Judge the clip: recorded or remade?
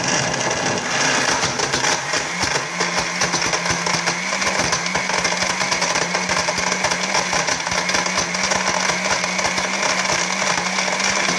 recorded